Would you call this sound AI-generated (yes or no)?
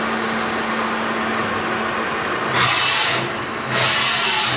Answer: no